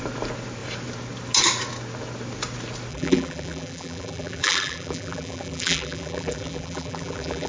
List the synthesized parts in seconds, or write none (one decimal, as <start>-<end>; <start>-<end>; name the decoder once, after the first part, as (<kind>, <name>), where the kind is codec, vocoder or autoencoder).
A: 2.9-7.5 (vocoder, BigVGAN v2)